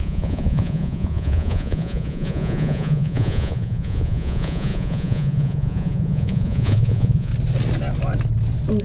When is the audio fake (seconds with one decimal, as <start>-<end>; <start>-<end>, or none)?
0.0-7.3